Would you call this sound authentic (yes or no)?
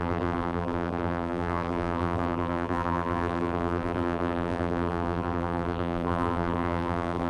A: no